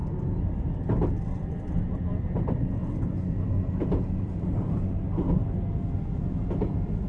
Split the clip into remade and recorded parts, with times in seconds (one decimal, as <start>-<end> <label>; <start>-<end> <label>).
0.0-7.1 recorded